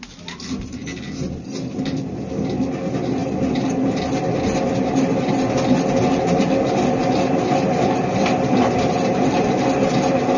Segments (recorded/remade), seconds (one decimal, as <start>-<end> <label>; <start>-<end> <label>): 0.0-10.4 recorded